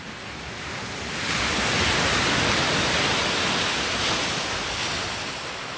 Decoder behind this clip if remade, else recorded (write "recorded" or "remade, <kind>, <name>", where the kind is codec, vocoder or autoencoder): recorded